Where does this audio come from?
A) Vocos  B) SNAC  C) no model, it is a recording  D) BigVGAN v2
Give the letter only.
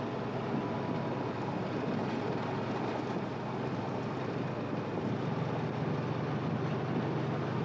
C